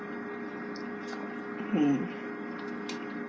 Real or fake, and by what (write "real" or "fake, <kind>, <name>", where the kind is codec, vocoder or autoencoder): real